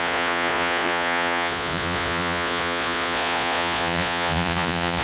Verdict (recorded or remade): remade